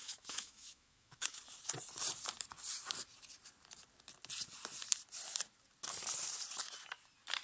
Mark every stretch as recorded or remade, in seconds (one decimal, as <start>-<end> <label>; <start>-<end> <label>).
0.0-1.4 remade; 1.4-7.4 recorded